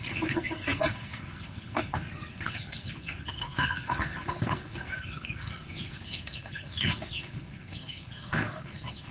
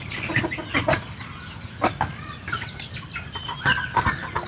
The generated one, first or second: first